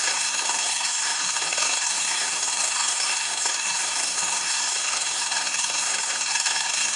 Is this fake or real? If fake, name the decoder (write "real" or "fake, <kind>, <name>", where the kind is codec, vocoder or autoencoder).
fake, codec, SNAC